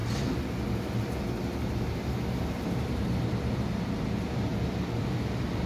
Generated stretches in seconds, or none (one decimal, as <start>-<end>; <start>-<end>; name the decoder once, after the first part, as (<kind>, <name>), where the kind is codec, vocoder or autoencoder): none